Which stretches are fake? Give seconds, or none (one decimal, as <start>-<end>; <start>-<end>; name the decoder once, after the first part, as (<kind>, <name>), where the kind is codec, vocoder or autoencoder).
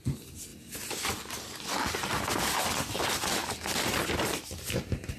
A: none